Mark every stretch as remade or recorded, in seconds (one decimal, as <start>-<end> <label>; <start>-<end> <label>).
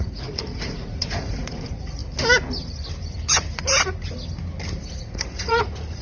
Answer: 0.0-2.0 remade; 2.0-4.9 recorded; 4.9-6.0 remade